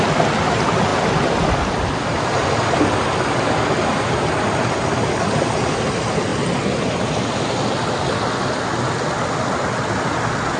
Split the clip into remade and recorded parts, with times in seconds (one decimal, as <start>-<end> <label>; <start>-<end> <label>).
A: 0.0-10.6 recorded